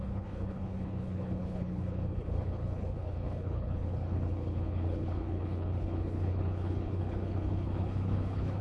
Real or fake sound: fake